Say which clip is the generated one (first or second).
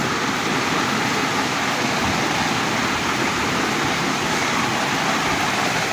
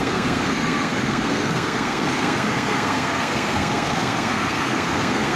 second